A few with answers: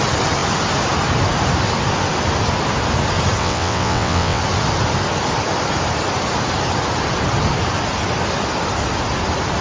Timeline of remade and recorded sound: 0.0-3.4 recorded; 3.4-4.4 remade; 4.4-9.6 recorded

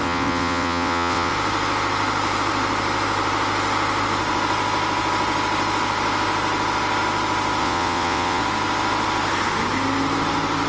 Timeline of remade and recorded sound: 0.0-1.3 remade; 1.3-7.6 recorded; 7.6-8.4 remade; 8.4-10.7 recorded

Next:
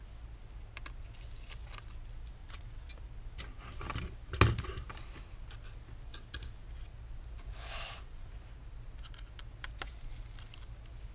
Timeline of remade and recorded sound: 0.0-2.4 recorded; 2.4-2.9 remade; 2.9-11.1 recorded

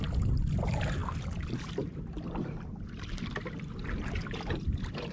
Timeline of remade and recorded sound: 0.0-5.1 recorded

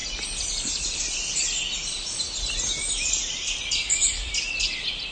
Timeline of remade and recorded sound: 0.0-5.1 recorded

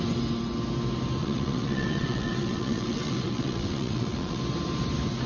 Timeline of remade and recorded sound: 0.0-1.2 recorded; 1.2-4.4 remade; 4.4-5.3 recorded

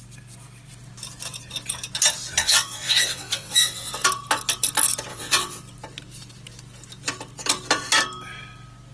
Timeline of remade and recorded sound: 0.0-2.4 recorded; 2.4-3.9 remade; 3.9-5.1 recorded; 5.1-5.6 remade; 5.6-8.9 recorded